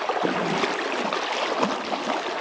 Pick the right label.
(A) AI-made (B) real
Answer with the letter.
B